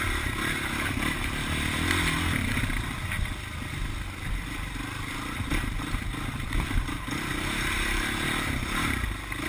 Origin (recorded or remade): recorded